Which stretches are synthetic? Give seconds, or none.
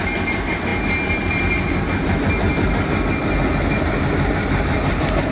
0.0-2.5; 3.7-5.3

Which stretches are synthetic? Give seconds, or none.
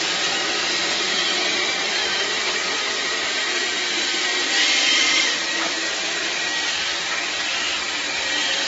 0.0-8.7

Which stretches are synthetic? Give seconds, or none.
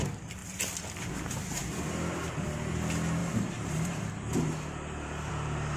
3.2-5.3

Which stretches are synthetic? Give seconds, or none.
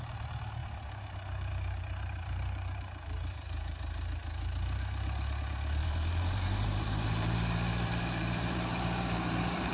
0.0-0.6; 1.5-9.7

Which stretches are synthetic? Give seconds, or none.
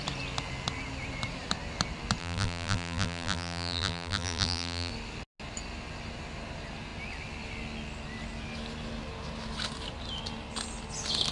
2.2-4.9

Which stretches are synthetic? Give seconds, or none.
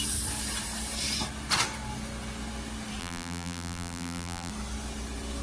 3.0-4.5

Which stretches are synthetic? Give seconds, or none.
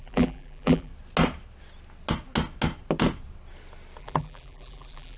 0.0-0.9; 4.0-5.2